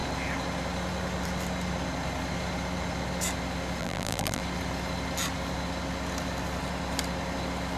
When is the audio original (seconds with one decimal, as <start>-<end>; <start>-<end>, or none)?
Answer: 0.0-3.8; 4.4-7.8